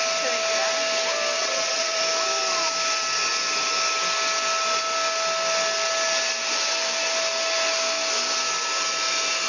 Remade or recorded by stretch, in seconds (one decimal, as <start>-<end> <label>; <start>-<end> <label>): 0.0-1.4 recorded; 1.4-2.0 remade; 2.0-9.5 recorded